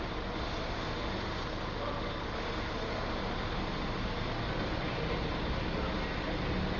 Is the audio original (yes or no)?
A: yes